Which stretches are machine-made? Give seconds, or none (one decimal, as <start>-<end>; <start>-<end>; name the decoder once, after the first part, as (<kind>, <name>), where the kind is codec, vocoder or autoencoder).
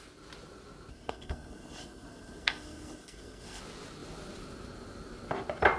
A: 0.9-3.6 (codec, SNAC)